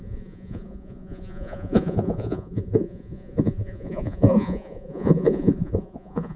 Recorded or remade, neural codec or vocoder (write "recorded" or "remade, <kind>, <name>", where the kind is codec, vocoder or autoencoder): remade, vocoder, Vocos